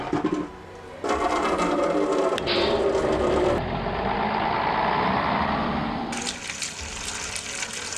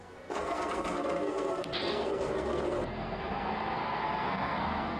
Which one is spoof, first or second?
second